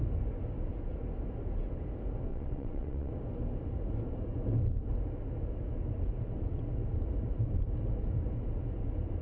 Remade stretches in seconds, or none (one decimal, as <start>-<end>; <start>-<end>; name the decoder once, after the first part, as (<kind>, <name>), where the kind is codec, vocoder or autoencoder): 2.3-3.1 (vocoder, WaveNeXt)